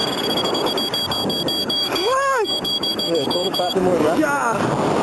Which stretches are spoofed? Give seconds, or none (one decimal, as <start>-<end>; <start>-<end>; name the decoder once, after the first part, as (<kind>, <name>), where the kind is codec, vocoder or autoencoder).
0.0-0.7 (codec, DAC); 1.6-4.6